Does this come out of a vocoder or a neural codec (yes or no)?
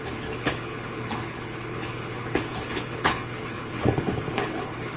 yes